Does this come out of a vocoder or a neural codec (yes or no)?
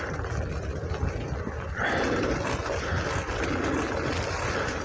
no